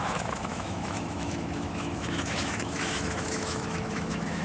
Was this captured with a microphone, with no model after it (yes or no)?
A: no